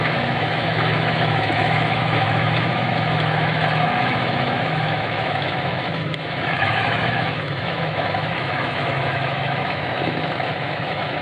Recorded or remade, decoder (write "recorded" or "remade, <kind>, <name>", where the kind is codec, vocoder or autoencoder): remade, autoencoder, DAC-VAE